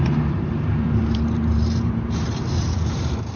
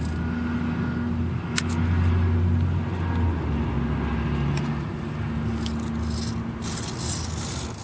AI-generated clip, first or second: first